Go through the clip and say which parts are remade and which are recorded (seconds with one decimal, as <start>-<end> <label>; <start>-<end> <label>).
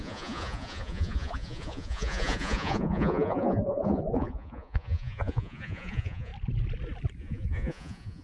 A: 0.0-6.3 remade; 6.3-7.2 recorded; 7.2-8.2 remade